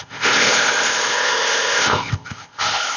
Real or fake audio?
fake